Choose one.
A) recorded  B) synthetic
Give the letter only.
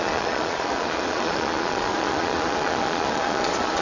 B